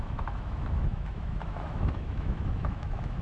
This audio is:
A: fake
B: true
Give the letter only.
A